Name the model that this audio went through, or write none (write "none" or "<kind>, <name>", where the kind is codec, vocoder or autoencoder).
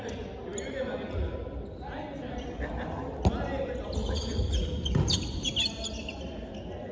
none